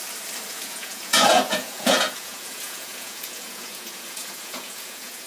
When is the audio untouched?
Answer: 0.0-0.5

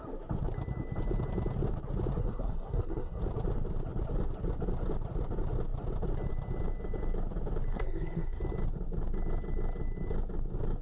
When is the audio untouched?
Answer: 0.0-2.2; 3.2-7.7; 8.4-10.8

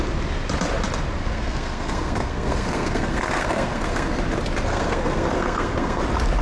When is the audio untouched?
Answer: 0.0-1.2; 4.2-4.7; 6.0-6.4

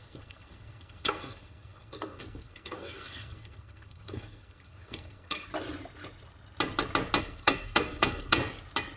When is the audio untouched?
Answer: 5.5-7.2; 8.4-9.0